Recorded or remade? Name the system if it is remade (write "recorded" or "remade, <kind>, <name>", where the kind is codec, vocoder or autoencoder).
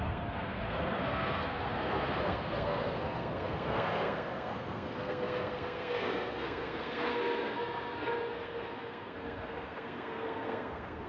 remade, codec, SNAC